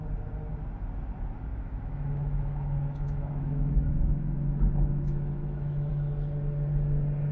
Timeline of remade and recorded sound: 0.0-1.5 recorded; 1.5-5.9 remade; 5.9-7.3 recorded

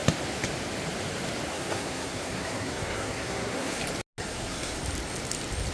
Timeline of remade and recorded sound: 0.0-1.5 recorded; 1.5-3.8 remade; 3.8-4.2 recorded; 4.2-4.8 remade; 4.8-5.7 recorded

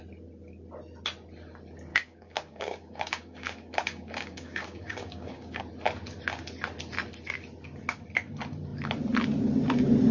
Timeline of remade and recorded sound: 0.0-1.9 recorded; 1.9-5.6 remade; 5.6-10.1 recorded

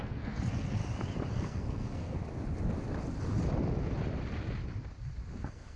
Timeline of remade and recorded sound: 0.0-0.8 remade; 0.8-1.3 recorded; 1.3-2.2 remade; 2.2-5.3 recorded; 5.3-5.8 remade